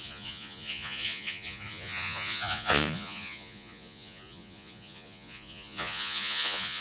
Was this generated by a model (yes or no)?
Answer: yes